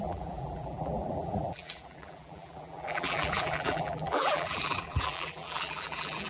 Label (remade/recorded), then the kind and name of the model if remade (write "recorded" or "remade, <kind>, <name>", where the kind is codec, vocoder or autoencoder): remade, vocoder, BigVGAN v2